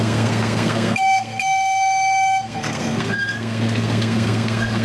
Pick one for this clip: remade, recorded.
remade